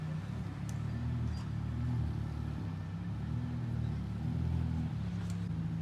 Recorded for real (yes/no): yes